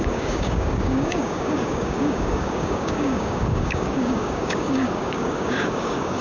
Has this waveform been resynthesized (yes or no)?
yes